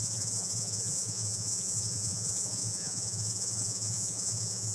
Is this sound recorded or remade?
remade